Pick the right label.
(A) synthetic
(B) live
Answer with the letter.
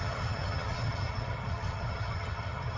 A